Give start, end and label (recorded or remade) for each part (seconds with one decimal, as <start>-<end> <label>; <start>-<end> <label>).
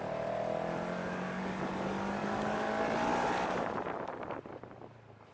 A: 0.0-1.0 recorded; 1.0-1.6 remade; 1.6-2.2 recorded; 2.2-2.7 remade; 2.7-5.3 recorded